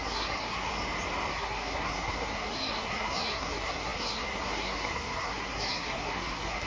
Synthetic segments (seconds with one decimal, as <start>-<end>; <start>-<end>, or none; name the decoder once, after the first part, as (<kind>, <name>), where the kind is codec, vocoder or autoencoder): 0.0-0.7 (codec, SNAC); 1.3-6.7

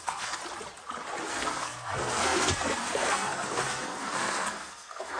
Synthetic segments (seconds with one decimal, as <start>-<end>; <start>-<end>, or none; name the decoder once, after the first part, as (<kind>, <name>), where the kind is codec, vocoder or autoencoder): 0.0-0.4 (codec, SNAC); 1.3-5.2

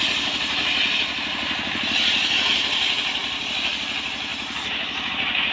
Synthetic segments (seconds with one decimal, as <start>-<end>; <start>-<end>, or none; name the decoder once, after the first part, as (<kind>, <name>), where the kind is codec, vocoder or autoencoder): none

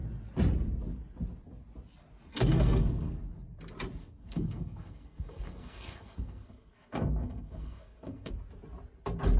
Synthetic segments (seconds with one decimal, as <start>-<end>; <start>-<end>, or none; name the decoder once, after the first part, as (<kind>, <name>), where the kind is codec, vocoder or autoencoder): 2.3-3.1 (codec, SNAC); 4.0-8.3